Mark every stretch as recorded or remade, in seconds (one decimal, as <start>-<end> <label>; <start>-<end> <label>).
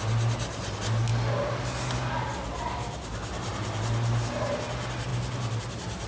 0.0-6.1 recorded